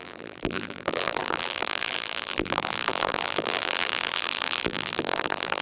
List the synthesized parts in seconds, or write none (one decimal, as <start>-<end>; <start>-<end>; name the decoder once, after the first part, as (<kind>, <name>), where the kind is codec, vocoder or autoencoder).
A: 0.0-5.6 (vocoder, BigVGAN v2)